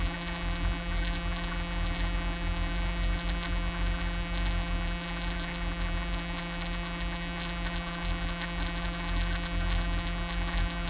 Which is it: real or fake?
fake